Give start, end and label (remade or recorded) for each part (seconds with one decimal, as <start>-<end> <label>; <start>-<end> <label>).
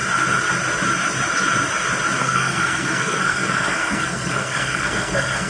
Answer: 0.0-2.2 recorded; 2.2-5.5 remade